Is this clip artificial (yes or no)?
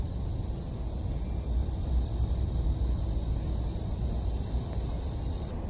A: no